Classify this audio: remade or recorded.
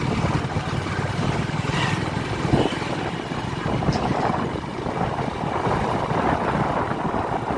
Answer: recorded